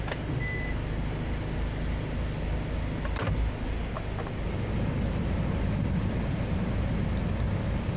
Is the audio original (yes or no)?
yes